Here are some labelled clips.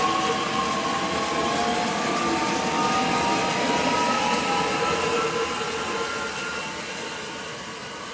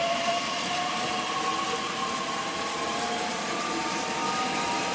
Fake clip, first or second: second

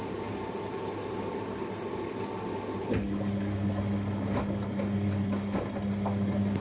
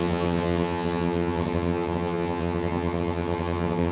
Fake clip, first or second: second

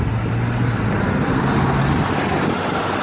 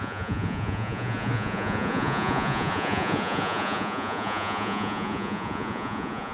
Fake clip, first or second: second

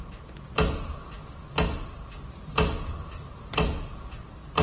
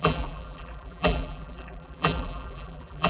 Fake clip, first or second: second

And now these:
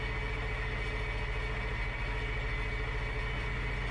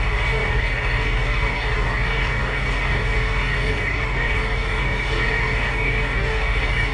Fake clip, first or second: second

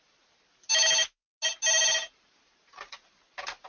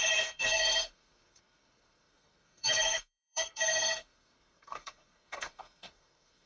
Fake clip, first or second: second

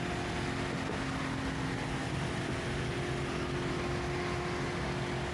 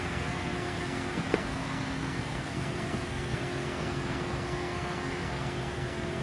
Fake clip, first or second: second